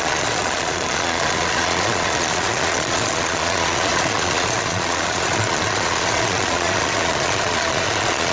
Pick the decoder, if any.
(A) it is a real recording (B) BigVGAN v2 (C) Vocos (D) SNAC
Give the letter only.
C